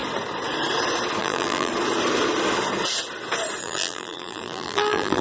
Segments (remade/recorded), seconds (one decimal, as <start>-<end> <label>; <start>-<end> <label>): 0.0-1.2 recorded; 1.2-1.7 remade; 1.7-3.6 recorded; 3.6-5.2 remade